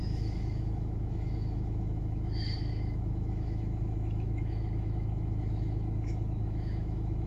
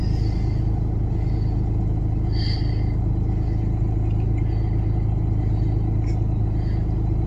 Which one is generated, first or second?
first